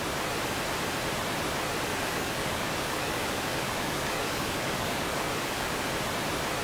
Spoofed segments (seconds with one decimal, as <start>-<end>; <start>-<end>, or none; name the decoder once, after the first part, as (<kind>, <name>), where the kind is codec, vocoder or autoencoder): 1.9-5.9 (codec, DAC)

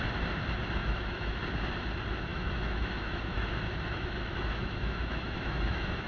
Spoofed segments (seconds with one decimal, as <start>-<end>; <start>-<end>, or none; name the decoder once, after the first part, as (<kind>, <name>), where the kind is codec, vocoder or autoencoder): 0.8-1.4 (autoencoder, DAC-VAE); 2.3-6.1